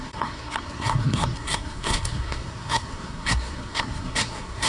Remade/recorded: remade